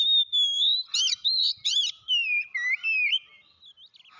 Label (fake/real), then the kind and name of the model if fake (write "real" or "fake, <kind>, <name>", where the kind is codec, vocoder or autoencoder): real